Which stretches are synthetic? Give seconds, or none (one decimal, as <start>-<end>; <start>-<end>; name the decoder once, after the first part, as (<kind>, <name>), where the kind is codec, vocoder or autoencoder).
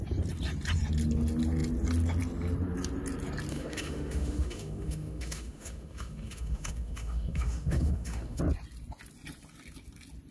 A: 3.5-8.4 (autoencoder, DAC-VAE)